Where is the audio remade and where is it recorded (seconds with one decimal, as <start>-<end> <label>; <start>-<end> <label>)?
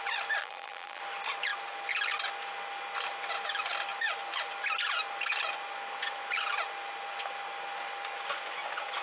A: 0.0-0.4 recorded; 0.4-1.0 remade; 1.0-9.0 recorded